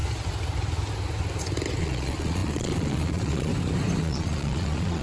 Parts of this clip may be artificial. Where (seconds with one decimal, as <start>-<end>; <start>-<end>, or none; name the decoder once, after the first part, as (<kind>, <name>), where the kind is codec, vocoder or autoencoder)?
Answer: 1.8-3.5 (vocoder, Vocos); 4.0-5.0